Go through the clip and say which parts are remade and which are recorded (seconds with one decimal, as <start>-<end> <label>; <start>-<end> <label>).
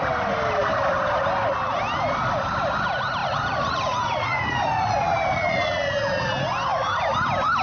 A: 0.0-3.2 recorded; 3.2-6.3 remade; 6.3-7.6 recorded